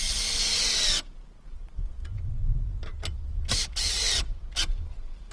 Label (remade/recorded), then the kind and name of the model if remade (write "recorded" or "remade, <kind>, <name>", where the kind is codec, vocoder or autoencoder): recorded